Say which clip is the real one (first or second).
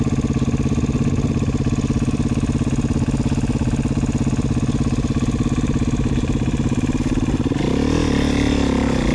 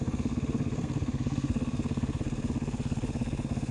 first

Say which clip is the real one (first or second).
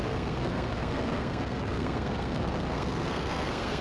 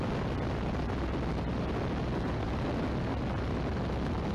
second